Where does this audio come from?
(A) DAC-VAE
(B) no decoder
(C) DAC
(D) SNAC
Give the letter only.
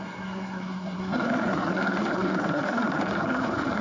D